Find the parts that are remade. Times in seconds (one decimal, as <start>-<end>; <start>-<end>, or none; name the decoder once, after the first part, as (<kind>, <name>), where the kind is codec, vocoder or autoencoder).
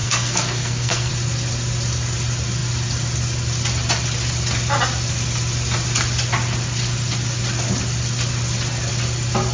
0.0-1.1 (codec, SNAC)